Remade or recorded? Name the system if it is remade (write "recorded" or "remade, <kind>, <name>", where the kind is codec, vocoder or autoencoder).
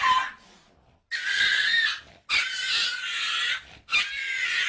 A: recorded